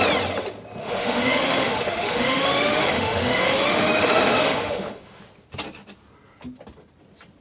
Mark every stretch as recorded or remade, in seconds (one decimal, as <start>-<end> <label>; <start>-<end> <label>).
0.0-0.8 recorded; 0.8-5.2 remade; 5.2-7.4 recorded